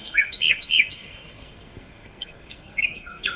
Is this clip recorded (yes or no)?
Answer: no